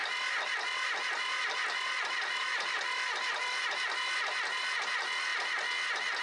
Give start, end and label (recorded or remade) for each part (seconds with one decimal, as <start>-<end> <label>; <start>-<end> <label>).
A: 0.0-6.2 recorded